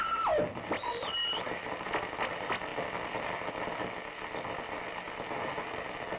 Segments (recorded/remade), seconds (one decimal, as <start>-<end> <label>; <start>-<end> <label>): 0.0-6.2 recorded